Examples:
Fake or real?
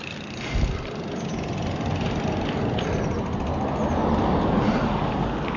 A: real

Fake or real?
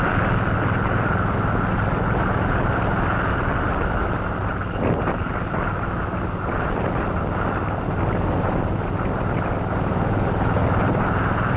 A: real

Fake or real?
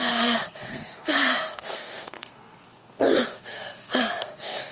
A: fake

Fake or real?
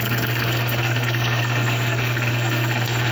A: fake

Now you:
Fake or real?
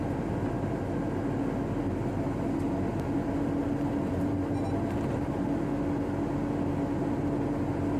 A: real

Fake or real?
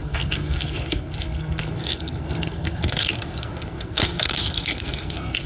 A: fake